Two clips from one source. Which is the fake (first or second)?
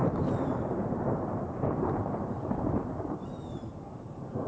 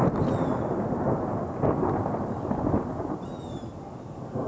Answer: first